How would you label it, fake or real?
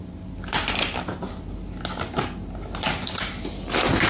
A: real